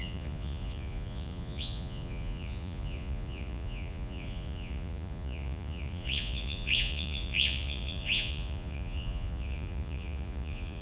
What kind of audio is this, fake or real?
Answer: fake